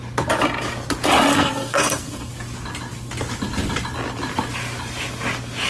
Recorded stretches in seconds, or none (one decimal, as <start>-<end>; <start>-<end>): 0.0-1.3; 2.3-5.7